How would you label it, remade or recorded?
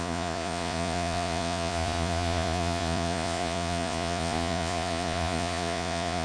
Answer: remade